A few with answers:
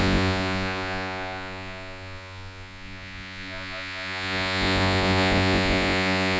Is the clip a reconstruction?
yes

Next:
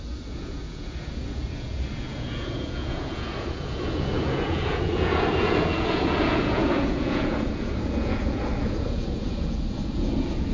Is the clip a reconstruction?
yes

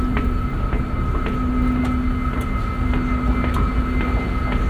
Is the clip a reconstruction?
no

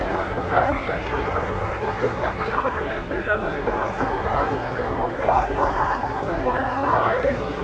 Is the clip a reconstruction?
yes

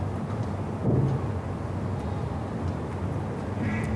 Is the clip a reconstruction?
no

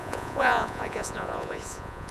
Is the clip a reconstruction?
yes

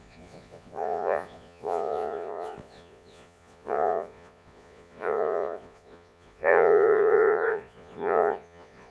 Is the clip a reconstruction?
yes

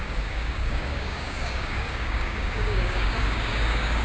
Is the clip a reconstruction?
yes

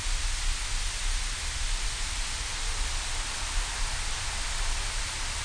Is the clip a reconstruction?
no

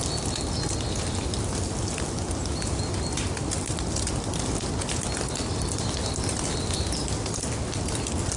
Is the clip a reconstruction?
no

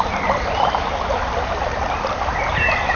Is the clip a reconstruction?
no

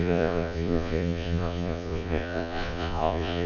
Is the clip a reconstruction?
yes